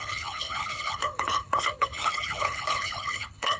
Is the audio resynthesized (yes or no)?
yes